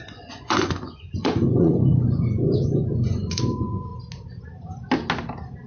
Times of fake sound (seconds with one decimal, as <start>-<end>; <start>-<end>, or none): 0.0-3.9

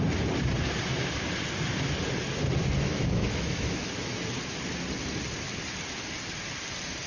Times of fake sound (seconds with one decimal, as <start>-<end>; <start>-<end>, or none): 2.9-4.2

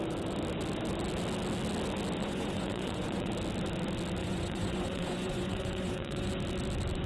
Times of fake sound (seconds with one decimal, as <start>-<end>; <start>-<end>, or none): 2.2-3.3; 4.2-6.3

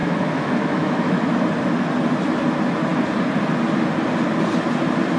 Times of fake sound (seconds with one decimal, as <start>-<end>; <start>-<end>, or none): 0.0-1.2

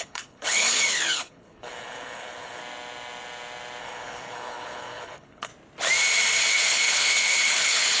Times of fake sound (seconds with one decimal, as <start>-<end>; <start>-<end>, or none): 0.0-2.6; 3.8-5.5; 6.5-8.0

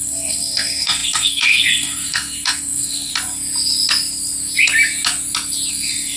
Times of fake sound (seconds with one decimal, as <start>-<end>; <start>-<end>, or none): 0.0-3.1; 5.7-6.2